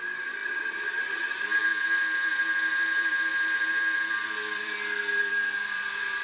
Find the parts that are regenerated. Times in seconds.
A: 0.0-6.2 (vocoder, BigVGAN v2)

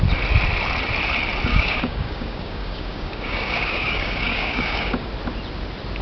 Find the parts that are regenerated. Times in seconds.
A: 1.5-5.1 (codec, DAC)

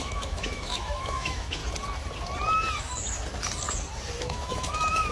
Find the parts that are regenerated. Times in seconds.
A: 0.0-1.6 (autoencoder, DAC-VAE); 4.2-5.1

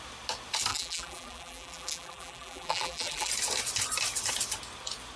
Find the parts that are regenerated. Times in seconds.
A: 0.7-3.3 (vocoder, BigVGAN v2)